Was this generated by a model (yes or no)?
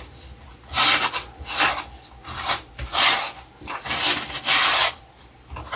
no